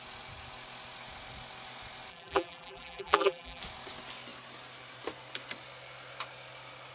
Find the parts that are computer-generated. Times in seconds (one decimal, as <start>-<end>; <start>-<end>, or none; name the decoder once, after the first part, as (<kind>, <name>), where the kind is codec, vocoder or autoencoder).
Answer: 2.1-3.6 (vocoder, BigVGAN v2)